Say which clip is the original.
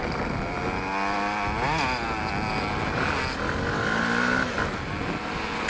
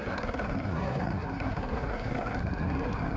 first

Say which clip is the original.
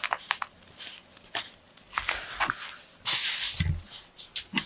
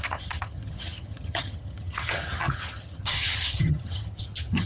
first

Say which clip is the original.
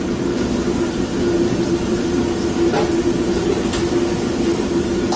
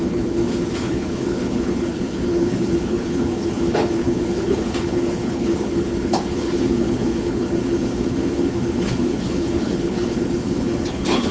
first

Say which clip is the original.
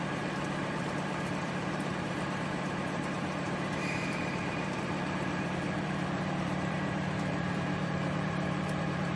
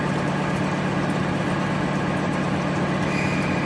second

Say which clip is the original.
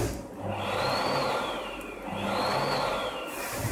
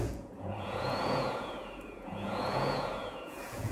first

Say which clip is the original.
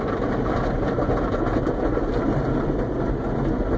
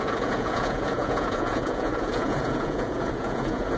first